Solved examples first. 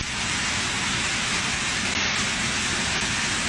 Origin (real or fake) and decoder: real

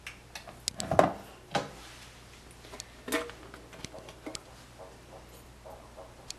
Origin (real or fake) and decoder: real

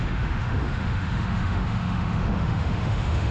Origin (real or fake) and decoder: fake, autoencoder, DAC-VAE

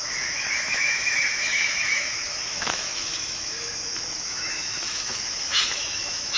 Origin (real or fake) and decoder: fake, autoencoder, DAC-VAE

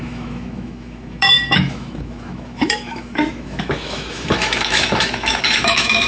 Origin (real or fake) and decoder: fake, autoencoder, DAC-VAE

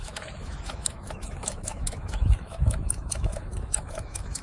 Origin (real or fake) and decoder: fake, autoencoder, DAC-VAE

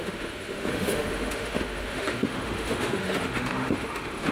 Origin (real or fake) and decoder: fake, autoencoder, DAC-VAE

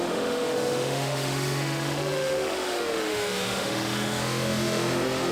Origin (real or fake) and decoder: fake, autoencoder, DAC-VAE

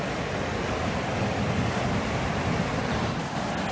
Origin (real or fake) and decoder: real